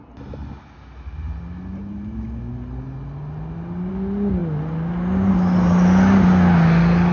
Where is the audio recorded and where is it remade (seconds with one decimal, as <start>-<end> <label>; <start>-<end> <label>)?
0.0-7.1 recorded

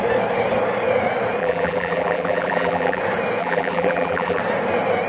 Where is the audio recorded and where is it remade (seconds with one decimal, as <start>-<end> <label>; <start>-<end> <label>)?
0.0-1.4 recorded; 1.4-3.0 remade; 3.0-3.4 recorded; 3.4-4.4 remade; 4.4-5.1 recorded

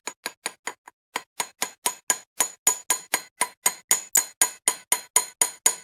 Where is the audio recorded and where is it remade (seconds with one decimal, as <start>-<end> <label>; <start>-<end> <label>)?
0.0-5.8 recorded

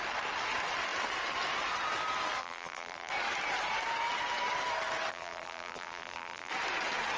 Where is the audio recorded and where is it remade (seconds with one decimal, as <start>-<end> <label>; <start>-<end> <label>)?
0.0-2.4 recorded; 2.4-3.1 remade; 3.1-5.1 recorded; 5.1-6.5 remade; 6.5-7.2 recorded

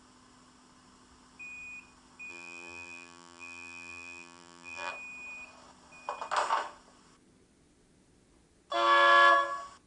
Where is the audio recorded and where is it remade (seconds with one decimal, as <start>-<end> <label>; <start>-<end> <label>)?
0.0-2.3 recorded; 2.3-4.9 remade; 4.9-9.9 recorded

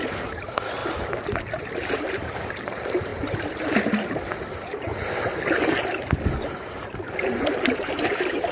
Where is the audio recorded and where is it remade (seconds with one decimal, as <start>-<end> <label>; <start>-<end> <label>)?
0.0-0.8 remade; 0.8-1.6 recorded; 1.6-4.9 remade; 4.9-6.5 recorded; 6.5-8.5 remade

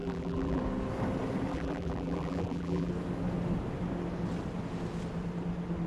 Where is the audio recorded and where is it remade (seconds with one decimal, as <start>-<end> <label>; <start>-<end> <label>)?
0.0-0.6 remade; 0.6-1.5 recorded; 1.5-2.9 remade; 2.9-5.9 recorded

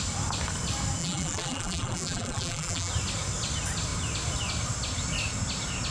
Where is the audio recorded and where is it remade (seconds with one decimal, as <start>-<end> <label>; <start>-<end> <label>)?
0.0-1.0 recorded; 1.0-2.9 remade; 2.9-5.9 recorded